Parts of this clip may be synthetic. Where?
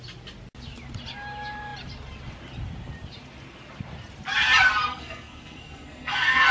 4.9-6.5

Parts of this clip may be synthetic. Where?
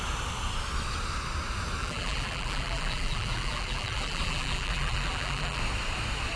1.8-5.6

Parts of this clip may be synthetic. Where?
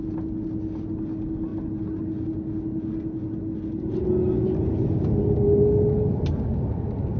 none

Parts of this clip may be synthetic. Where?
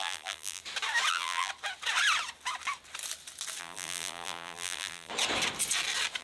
0.0-0.6; 1.1-1.5; 3.6-5.1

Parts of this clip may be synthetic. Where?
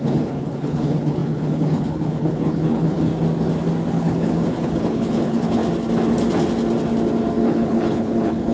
0.0-3.1; 3.9-5.6; 7.5-8.5